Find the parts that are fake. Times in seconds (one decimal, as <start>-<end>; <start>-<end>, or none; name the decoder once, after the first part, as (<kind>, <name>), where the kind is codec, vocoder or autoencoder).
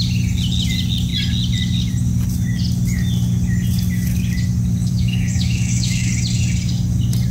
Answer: 4.8-6.1 (autoencoder, DAC-VAE)